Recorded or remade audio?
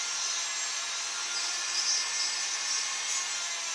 recorded